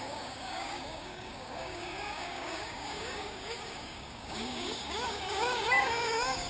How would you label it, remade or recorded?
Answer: remade